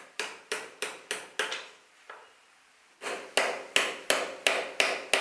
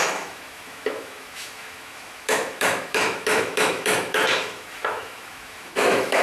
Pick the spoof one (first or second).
second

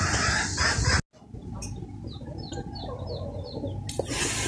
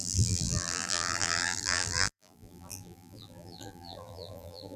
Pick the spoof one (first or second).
second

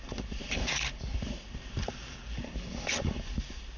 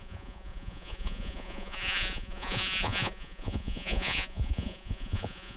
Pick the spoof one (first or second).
second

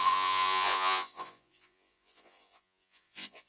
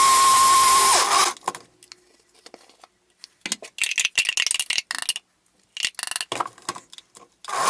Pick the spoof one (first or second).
first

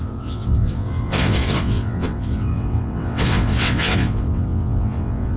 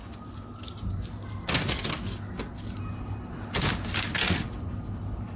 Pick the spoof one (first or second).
first